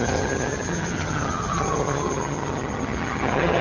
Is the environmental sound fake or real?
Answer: fake